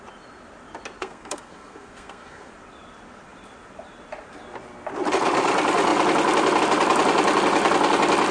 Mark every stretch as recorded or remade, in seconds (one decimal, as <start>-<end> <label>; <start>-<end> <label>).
0.0-1.0 recorded; 1.0-2.5 remade; 2.5-8.3 recorded